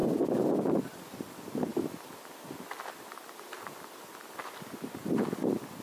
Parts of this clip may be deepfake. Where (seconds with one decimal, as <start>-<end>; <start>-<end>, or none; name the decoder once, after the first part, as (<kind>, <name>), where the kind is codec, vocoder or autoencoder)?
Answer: none